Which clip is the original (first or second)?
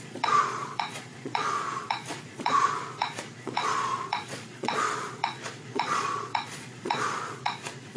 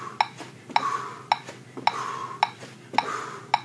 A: second